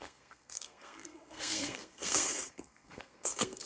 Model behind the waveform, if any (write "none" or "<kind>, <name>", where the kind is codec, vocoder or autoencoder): codec, SNAC